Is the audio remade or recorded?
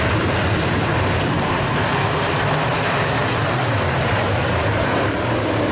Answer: remade